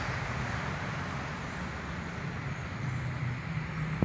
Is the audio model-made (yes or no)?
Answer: no